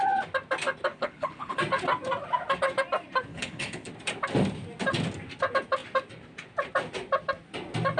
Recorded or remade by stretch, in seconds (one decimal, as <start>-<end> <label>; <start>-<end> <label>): 0.0-0.9 recorded; 0.9-1.6 remade; 1.6-3.3 recorded; 3.3-3.9 remade; 3.9-8.0 recorded